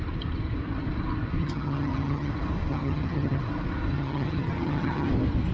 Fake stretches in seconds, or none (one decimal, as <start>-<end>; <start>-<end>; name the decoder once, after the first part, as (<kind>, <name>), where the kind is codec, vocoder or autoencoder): 1.4-2.3 (vocoder, HiFi-GAN); 2.7-3.4; 3.9-5.1